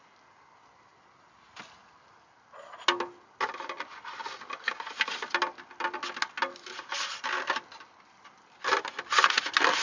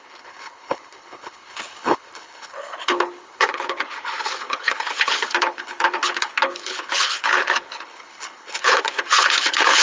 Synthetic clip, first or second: second